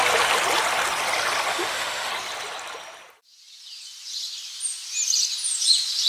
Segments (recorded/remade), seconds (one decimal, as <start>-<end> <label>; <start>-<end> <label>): 0.0-1.5 recorded; 1.5-2.1 remade; 2.1-6.1 recorded